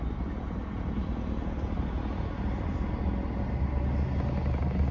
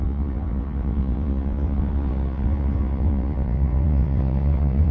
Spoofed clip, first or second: second